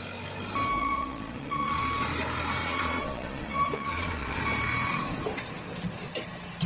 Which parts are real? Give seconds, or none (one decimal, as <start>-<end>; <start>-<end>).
0.0-0.8; 1.8-2.6; 4.4-6.7